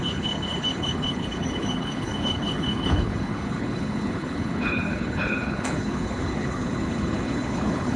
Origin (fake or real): fake